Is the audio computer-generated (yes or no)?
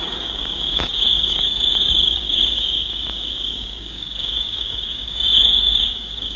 yes